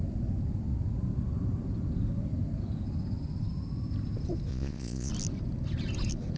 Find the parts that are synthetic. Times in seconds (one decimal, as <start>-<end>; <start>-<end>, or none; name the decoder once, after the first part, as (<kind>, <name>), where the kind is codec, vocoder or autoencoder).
4.5-5.1 (vocoder, Vocos)